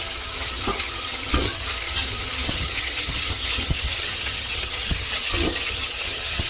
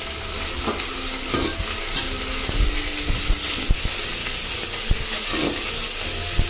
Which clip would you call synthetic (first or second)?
first